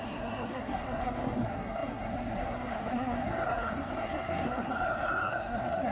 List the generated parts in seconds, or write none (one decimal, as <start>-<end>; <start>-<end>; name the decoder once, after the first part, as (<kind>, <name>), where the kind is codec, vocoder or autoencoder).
0.0-5.9 (codec, SNAC)